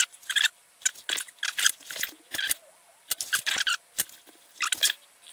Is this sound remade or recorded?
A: recorded